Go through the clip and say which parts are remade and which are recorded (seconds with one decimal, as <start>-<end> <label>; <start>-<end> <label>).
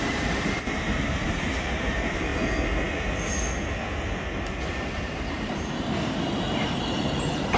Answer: 0.0-2.3 remade; 2.3-5.0 recorded; 5.0-7.6 remade